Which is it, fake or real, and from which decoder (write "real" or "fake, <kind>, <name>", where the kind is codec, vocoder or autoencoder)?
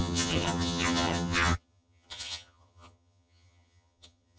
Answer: fake, vocoder, HiFi-GAN